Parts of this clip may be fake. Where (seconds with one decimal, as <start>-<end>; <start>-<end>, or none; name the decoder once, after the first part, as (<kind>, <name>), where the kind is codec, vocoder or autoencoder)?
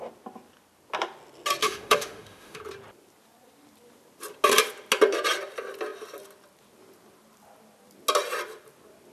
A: 1.6-2.6 (autoencoder, DAC-VAE)